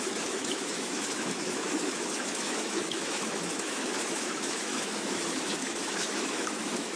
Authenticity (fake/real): fake